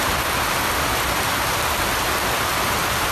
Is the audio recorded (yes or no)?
yes